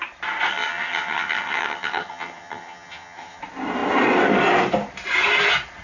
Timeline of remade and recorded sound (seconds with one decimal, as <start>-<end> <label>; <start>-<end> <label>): 0.0-0.5 recorded; 0.5-3.4 remade; 3.4-5.8 recorded